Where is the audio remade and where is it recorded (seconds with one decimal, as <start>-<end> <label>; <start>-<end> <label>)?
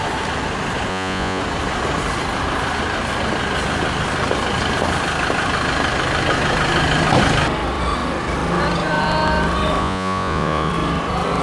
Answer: 0.0-0.9 recorded; 0.9-1.4 remade; 1.4-9.8 recorded; 9.8-10.7 remade; 10.7-11.4 recorded